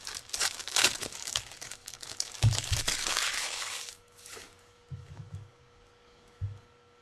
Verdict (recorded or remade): remade